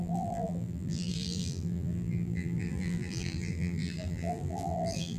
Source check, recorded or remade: remade